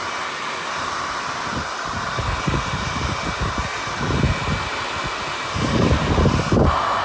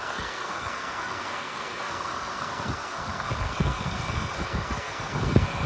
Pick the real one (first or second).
first